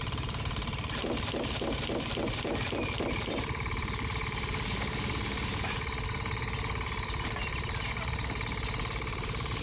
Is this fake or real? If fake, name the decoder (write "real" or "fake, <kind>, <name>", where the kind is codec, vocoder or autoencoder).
fake, vocoder, BigVGAN v2